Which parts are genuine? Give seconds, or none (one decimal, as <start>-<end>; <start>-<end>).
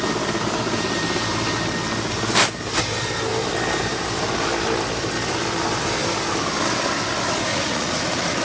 0.0-7.5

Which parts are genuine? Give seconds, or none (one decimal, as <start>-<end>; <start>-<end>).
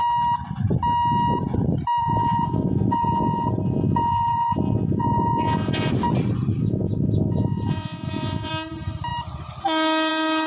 0.0-2.0; 5.9-6.6; 8.5-10.5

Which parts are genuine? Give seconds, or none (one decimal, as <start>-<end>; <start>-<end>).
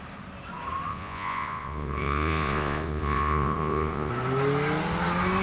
0.0-0.9; 4.1-5.4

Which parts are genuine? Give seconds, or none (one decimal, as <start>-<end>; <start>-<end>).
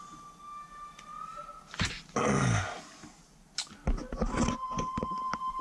0.0-5.6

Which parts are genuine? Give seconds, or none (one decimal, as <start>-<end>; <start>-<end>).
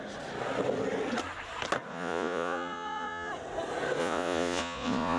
0.0-1.9; 3.3-4.0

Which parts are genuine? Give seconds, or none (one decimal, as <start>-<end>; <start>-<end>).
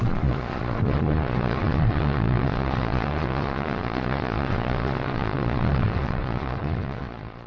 none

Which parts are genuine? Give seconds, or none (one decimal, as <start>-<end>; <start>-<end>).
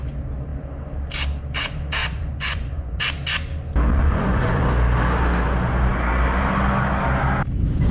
0.0-2.0; 3.0-3.9; 4.7-7.9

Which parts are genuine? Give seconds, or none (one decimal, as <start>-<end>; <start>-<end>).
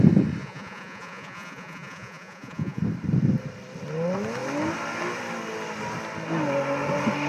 0.0-0.4; 2.8-7.3